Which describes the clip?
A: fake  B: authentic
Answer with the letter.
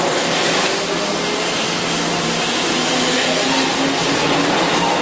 B